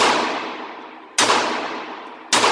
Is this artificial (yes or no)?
no